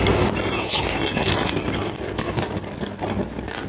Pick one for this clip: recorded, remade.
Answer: recorded